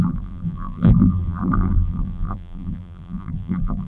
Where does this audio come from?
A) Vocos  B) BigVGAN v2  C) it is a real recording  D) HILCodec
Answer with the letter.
B